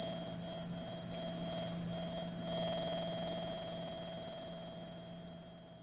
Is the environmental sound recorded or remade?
recorded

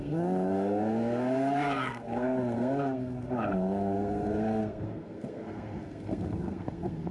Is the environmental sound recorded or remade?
remade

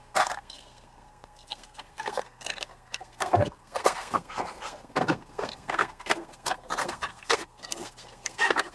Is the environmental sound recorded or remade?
remade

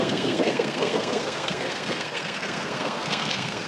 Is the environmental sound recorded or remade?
remade